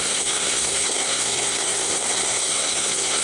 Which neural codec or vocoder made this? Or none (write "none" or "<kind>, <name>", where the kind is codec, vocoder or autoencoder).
codec, SNAC